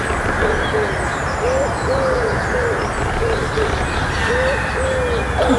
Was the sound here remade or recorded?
recorded